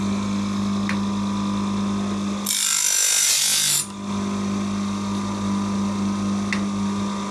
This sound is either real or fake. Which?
real